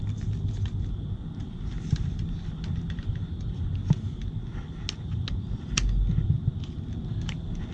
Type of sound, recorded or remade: recorded